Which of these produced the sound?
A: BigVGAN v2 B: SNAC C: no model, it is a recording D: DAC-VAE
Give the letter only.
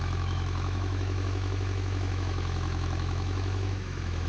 D